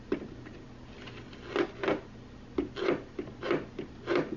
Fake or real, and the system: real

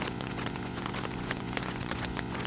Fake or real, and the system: fake, vocoder, Vocos